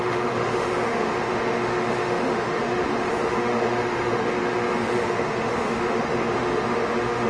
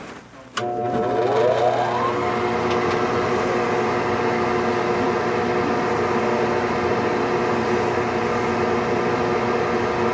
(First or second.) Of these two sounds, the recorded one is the second